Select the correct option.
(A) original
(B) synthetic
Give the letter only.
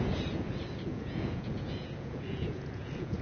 B